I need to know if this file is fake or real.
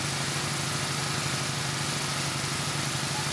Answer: real